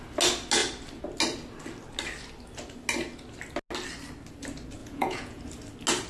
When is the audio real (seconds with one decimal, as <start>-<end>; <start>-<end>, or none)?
0.0-4.8; 5.4-6.1